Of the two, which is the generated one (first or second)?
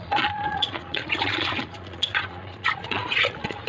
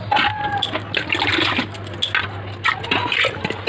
first